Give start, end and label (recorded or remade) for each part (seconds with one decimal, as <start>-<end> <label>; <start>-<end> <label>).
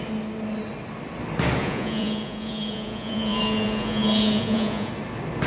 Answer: 0.0-1.6 recorded; 1.6-4.9 remade; 4.9-5.5 recorded